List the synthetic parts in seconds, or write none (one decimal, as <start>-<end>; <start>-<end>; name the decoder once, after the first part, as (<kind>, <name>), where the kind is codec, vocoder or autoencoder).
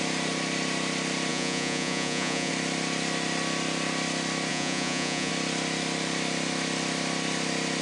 1.3-2.5 (vocoder, Vocos); 4.5-5.3